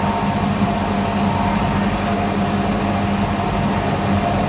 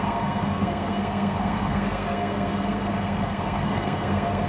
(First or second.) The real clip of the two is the first